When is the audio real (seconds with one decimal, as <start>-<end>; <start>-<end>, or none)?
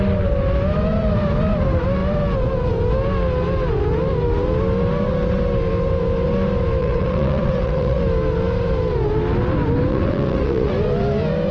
0.0-6.8; 8.0-9.9; 10.7-11.5